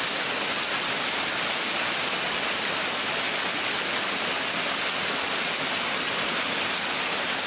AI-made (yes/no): no